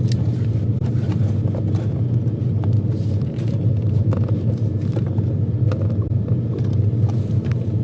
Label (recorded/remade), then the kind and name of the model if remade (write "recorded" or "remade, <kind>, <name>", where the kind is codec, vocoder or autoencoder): recorded